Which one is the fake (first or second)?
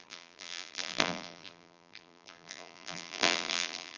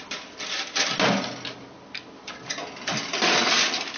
first